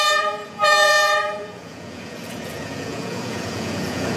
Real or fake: fake